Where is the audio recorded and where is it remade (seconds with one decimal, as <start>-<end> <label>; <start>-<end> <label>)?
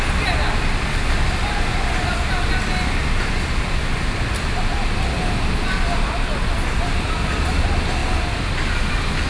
0.0-9.3 recorded